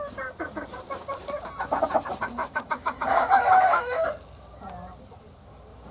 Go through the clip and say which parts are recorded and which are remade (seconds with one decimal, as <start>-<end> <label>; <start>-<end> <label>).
0.0-2.4 recorded; 2.4-4.0 remade; 4.0-5.9 recorded